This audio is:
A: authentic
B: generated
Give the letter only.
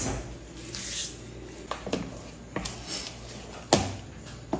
A